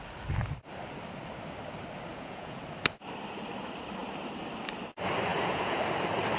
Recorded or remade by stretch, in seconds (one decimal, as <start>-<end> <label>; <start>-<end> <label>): 0.0-2.1 recorded; 2.1-2.6 remade; 2.6-5.3 recorded; 5.3-5.8 remade; 5.8-6.4 recorded